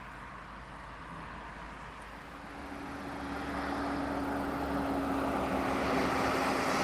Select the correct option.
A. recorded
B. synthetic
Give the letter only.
A